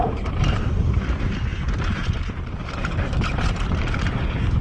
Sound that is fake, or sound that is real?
fake